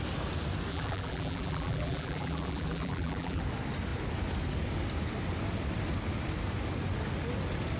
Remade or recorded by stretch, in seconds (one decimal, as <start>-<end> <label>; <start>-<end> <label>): 0.0-0.7 recorded; 0.7-3.4 remade; 3.4-7.8 recorded